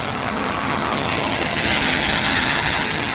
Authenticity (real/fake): fake